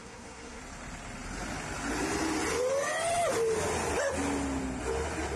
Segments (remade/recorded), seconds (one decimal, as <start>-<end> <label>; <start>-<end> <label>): 0.0-0.6 remade; 0.6-5.4 recorded